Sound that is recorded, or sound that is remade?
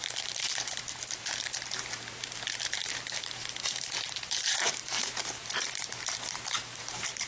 remade